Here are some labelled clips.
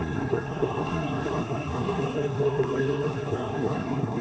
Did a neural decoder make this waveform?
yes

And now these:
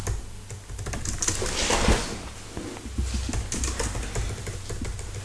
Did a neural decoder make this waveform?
no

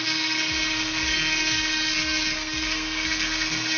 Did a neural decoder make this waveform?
yes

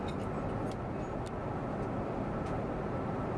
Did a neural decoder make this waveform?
no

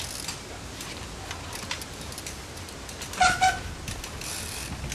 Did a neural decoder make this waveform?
no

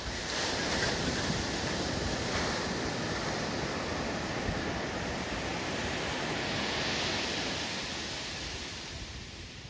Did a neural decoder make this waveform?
no